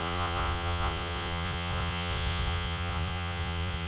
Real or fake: fake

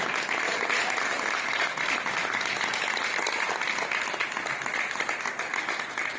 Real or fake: real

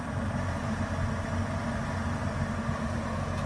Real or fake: real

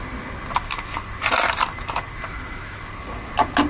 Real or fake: real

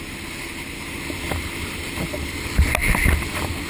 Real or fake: real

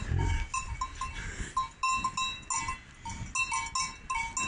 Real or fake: real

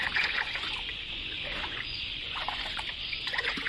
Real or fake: fake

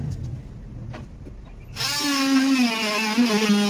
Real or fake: real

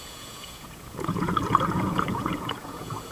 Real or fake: fake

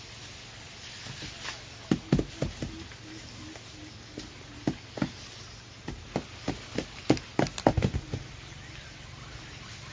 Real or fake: real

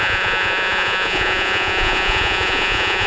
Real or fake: fake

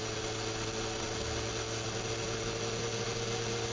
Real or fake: real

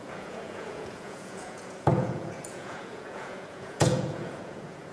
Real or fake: fake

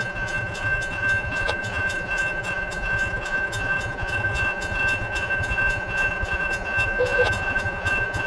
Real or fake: fake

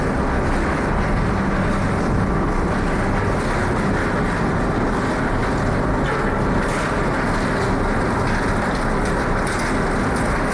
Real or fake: real